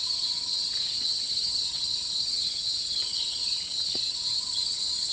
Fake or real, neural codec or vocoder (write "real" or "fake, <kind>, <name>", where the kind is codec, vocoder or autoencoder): fake, vocoder, HiFi-GAN